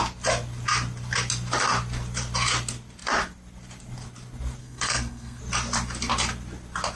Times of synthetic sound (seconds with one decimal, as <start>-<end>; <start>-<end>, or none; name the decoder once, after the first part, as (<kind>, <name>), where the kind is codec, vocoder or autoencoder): 4.6-5.4 (codec, SNAC)